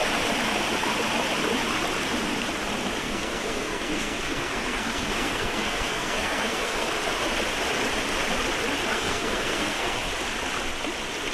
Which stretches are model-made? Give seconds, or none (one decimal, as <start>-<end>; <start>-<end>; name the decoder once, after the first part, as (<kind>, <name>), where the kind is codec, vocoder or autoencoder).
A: 3.0-6.9 (codec, SNAC); 8.9-10.1